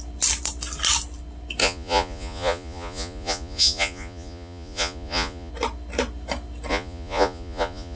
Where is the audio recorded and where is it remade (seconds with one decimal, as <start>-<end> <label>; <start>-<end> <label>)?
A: 0.0-1.6 recorded; 1.6-5.5 remade; 5.5-6.7 recorded; 6.7-8.0 remade